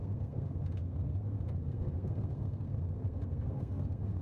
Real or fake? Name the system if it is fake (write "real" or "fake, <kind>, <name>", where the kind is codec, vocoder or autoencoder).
fake, codec, SNAC